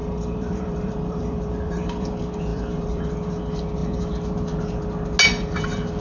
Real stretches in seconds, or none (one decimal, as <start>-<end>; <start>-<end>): 2.1-2.5; 3.1-6.0